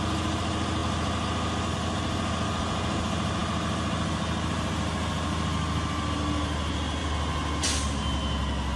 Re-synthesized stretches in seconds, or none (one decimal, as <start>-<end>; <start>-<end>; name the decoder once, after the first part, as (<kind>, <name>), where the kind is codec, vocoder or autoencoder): none

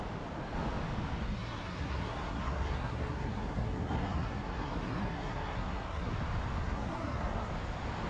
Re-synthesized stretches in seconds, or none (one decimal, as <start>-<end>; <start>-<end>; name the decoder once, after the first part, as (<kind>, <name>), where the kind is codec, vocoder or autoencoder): 1.2-6.1 (codec, SNAC); 6.6-7.5

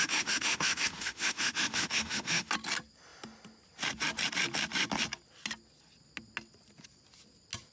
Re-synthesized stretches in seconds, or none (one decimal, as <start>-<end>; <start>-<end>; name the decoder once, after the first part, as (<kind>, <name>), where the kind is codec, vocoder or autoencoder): 0.0-2.5 (autoencoder, DAC-VAE)

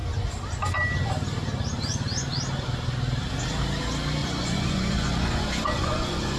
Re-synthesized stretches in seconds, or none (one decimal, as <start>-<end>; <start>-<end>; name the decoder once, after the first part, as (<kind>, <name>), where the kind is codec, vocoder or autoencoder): 4.2-6.4 (vocoder, Vocos)

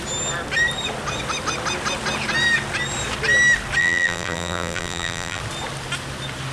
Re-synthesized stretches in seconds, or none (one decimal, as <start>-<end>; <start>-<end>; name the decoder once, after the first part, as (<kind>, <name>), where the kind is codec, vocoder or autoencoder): 3.8-5.4 (vocoder, BigVGAN v2)